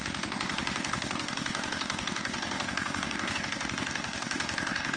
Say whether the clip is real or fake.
fake